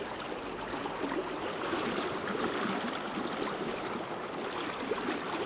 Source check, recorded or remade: recorded